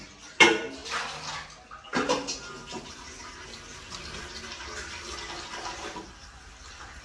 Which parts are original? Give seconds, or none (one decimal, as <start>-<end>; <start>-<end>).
0.0-7.0